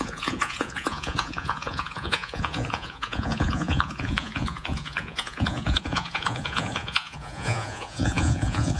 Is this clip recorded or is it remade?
remade